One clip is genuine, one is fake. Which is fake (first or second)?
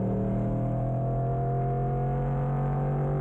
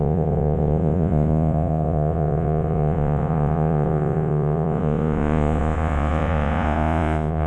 second